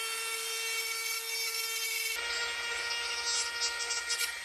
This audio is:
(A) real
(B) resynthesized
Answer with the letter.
A